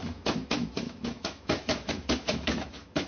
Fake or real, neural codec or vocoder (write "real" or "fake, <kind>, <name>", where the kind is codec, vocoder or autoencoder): fake, autoencoder, DAC-VAE